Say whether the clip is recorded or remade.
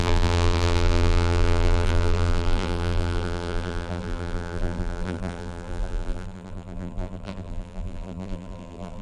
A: remade